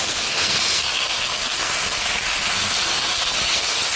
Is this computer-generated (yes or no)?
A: yes